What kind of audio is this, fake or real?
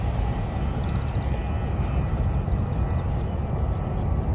real